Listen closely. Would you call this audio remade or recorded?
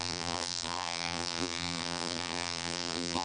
remade